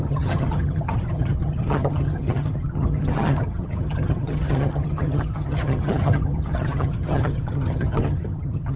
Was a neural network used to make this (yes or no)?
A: yes